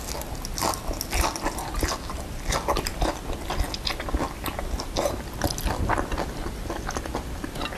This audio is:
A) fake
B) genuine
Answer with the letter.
B